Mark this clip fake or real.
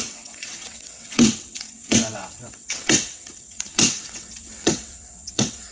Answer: fake